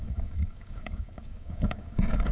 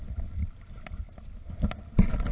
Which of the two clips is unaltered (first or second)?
second